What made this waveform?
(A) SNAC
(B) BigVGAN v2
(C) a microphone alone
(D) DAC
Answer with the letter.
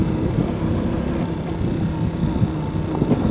C